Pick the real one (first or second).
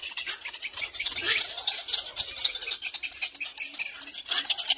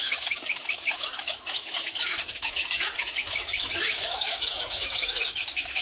first